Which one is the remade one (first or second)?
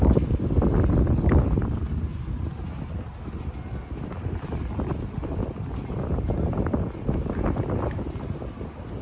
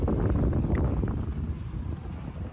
second